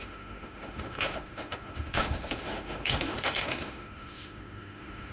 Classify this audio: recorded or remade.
remade